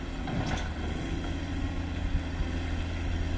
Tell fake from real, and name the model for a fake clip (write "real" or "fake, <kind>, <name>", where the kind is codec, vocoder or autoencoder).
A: real